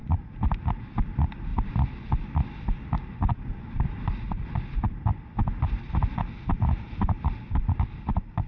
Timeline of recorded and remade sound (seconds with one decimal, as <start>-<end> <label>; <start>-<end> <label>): 0.0-0.8 remade; 0.8-8.5 recorded